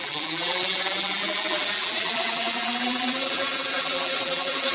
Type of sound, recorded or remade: remade